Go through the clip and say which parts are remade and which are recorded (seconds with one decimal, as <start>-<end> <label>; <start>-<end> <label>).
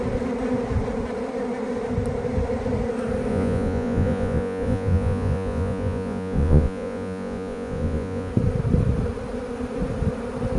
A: 0.0-3.3 recorded; 3.3-8.3 remade; 8.3-10.6 recorded